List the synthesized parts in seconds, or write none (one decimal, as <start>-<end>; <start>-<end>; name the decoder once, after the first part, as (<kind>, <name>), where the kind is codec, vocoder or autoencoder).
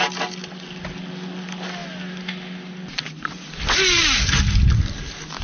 none